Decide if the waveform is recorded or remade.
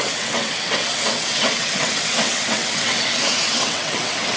remade